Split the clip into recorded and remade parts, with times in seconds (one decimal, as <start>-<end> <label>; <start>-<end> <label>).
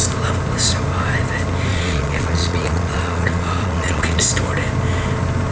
0.0-1.7 recorded; 1.7-4.2 remade; 4.2-5.5 recorded